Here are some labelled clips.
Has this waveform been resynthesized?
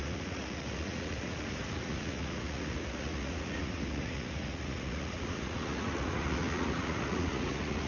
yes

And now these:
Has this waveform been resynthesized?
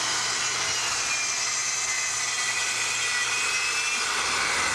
no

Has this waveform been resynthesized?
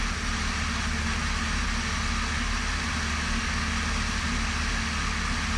no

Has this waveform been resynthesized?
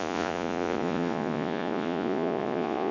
yes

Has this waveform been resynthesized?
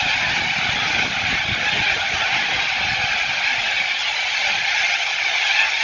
no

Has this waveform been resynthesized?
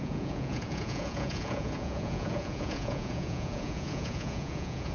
yes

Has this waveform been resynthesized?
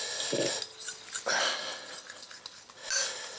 no